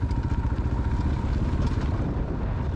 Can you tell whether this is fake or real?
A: real